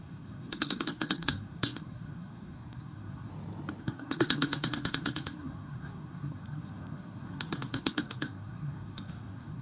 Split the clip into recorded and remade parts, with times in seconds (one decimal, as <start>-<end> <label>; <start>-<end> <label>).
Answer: 0.0-3.3 remade; 3.3-3.8 recorded; 3.8-9.6 remade